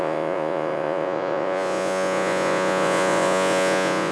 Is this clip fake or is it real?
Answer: fake